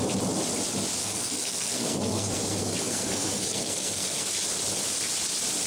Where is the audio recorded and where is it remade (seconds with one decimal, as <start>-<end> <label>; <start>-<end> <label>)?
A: 0.0-1.0 recorded; 1.0-4.3 remade; 4.3-5.7 recorded